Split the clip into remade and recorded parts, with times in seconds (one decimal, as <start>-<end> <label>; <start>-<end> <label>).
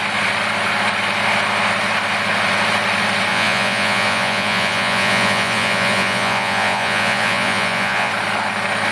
0.0-3.3 recorded; 3.3-8.1 remade; 8.1-8.9 recorded